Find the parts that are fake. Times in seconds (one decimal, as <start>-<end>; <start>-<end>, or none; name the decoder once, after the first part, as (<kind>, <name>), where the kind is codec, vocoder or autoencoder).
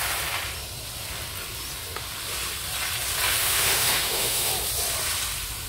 3.4-4.5 (autoencoder, DAC-VAE)